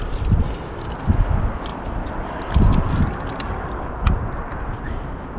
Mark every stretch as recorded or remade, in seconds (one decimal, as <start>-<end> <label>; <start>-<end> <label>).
0.0-5.4 recorded